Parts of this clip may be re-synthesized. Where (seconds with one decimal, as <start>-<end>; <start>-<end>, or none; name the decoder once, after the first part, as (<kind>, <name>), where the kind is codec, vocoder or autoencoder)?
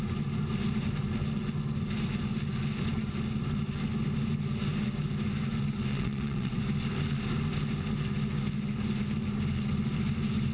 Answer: 5.9-6.6 (vocoder, WaveNeXt)